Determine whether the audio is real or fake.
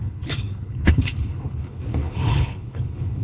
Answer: fake